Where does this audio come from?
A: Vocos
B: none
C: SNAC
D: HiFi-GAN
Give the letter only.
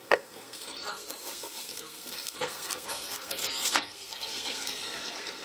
C